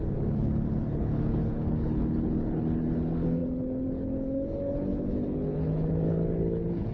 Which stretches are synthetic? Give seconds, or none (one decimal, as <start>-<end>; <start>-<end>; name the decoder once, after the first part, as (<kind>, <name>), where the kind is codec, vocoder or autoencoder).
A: 0.0-6.9 (codec, HILCodec)